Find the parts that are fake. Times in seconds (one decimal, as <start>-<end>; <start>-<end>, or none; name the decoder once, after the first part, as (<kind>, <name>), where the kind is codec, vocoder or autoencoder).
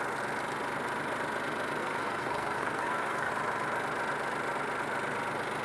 1.8-3.3 (codec, SNAC)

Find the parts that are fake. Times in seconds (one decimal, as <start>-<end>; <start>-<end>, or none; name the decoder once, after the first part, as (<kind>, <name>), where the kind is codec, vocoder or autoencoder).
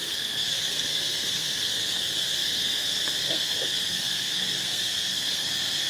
0.0-5.9 (codec, SNAC)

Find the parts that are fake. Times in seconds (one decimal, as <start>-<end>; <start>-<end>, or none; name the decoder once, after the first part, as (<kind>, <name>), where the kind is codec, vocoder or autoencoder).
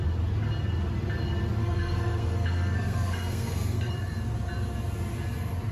1.6-3.9 (codec, SNAC)